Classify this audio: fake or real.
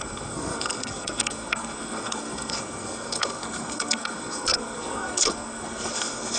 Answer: fake